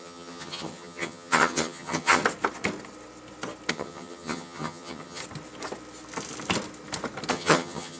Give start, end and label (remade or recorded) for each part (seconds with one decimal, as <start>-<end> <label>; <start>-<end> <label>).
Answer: 0.0-2.2 remade; 2.2-3.7 recorded; 3.7-5.2 remade; 5.2-7.3 recorded; 7.3-8.0 remade